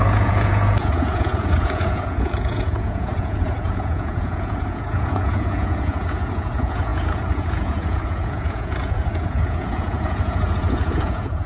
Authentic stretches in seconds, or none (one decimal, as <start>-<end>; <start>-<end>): none